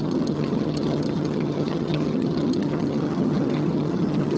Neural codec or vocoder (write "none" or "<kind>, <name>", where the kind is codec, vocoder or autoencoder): vocoder, HiFi-GAN